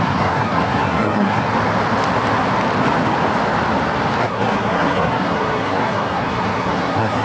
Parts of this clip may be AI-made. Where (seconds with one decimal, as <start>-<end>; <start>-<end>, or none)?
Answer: 0.0-1.5; 4.2-7.2